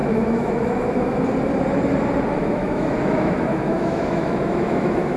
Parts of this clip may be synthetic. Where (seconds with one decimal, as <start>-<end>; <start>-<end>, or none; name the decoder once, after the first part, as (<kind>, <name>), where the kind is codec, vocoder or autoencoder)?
0.0-1.2 (autoencoder, DAC-VAE); 2.4-5.2